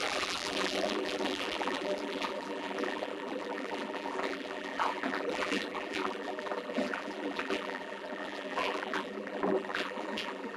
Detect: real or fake fake